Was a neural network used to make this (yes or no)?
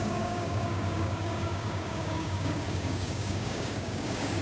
yes